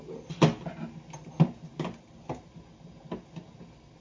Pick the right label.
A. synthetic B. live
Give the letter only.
B